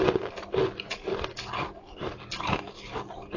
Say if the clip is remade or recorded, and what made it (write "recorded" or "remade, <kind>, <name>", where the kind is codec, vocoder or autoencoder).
recorded